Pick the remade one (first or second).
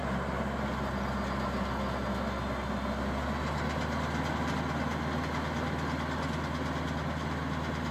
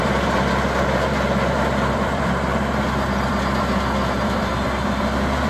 second